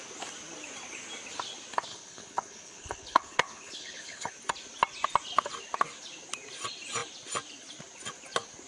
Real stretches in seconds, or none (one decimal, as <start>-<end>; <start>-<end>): 0.0-1.9; 4.3-8.7

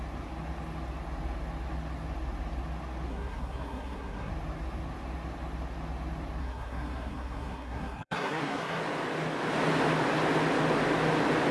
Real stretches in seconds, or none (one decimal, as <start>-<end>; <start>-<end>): 0.0-3.1; 4.3-6.4; 8.8-11.5

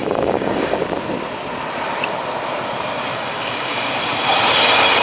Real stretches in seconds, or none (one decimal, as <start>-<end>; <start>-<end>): 0.8-3.1; 3.9-5.0